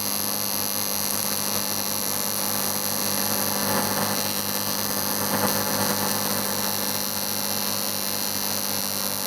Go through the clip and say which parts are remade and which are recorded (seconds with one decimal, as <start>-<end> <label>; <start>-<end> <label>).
0.0-9.3 recorded